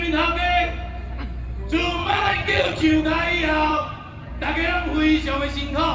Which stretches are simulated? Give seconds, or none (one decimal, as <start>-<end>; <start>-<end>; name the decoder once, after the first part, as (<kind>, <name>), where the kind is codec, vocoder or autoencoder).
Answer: 2.0-3.0 (vocoder, HiFi-GAN); 3.7-4.3

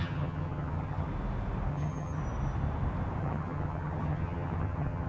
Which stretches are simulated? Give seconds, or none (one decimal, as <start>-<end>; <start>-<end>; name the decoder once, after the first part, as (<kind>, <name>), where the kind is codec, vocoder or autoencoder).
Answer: 0.0-1.1 (vocoder, HiFi-GAN); 1.7-2.2; 3.2-5.1

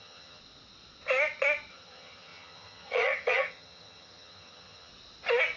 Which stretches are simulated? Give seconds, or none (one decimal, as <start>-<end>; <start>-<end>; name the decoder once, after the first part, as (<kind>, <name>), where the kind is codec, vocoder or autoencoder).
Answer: 0.0-0.4 (vocoder, HiFi-GAN); 1.7-4.9

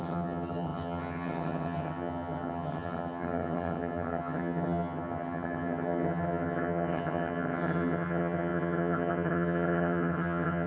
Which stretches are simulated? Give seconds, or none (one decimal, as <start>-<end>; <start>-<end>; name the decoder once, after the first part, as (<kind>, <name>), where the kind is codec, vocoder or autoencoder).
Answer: 0.0-10.7 (vocoder, HiFi-GAN)

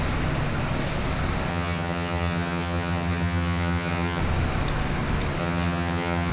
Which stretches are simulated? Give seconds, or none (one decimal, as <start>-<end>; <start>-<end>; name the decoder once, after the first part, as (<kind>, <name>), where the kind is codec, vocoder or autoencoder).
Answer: 1.5-4.2 (vocoder, HiFi-GAN); 5.4-6.3

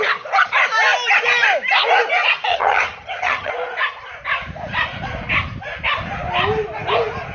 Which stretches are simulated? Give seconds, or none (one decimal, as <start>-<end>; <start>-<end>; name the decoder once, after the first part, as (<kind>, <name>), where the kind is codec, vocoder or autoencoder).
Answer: 2.5-3.5 (vocoder, HiFi-GAN)

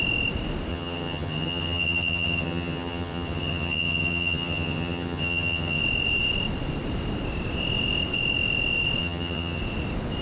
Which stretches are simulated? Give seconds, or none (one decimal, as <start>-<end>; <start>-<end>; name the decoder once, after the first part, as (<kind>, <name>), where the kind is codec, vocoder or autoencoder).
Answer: 0.7-5.8 (vocoder, HiFi-GAN); 9.0-9.6